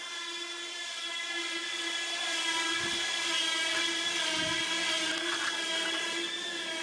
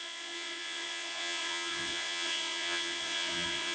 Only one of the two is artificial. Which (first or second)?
second